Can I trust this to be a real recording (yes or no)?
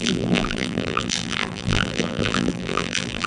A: no